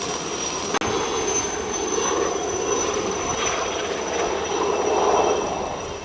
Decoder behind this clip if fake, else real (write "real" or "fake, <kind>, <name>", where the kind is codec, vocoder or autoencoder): real